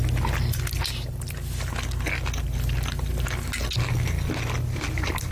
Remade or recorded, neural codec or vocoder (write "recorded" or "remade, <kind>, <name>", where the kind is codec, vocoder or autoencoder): recorded